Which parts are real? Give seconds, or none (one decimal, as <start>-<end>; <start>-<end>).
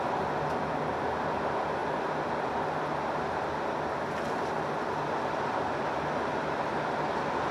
0.0-7.5